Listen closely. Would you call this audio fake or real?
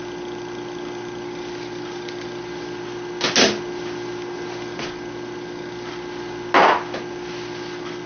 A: real